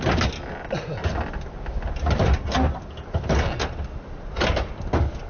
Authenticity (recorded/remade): recorded